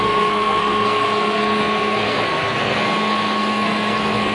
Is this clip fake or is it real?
fake